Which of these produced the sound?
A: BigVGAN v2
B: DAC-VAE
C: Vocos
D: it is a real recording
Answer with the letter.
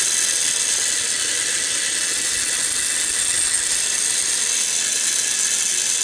D